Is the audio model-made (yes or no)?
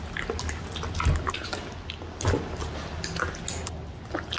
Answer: no